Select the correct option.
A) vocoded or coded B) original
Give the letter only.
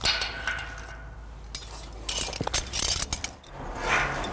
B